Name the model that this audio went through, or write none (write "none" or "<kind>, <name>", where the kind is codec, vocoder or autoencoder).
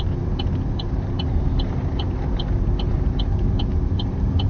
vocoder, BigVGAN v2